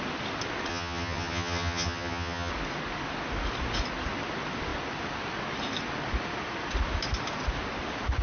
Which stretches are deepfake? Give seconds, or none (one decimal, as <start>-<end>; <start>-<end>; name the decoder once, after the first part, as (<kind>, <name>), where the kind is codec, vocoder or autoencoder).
0.7-2.5 (vocoder, HiFi-GAN)